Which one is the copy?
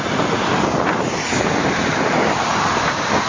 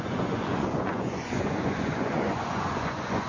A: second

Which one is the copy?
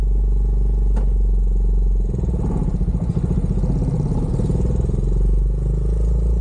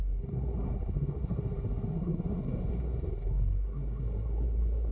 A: second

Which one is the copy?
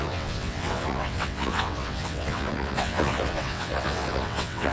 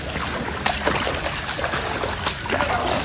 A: first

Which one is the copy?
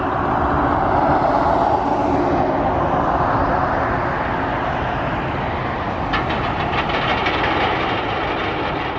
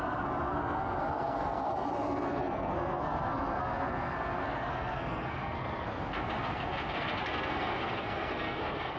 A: second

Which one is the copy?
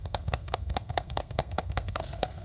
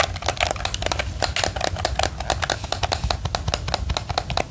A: first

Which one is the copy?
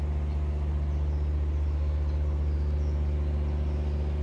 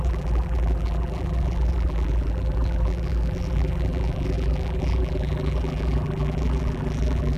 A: second